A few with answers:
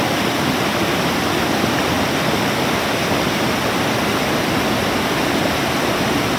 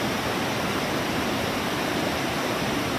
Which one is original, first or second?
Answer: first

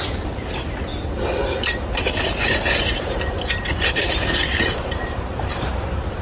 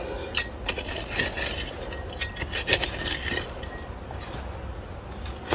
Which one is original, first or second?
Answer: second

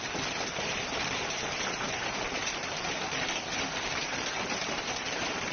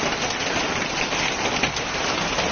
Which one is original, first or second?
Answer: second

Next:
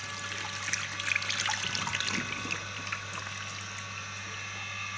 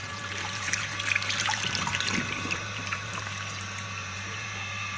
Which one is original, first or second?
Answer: first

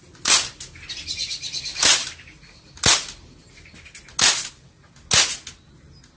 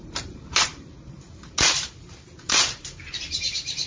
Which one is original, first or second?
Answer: first